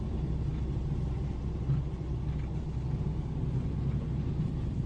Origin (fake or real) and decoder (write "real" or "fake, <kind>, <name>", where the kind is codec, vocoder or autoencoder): real